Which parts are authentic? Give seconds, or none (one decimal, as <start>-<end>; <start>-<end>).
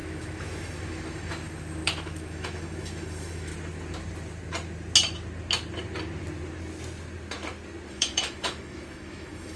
3.5-7.9